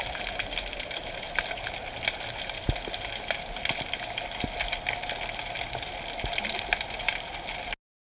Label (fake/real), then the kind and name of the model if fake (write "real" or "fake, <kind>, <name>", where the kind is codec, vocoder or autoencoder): real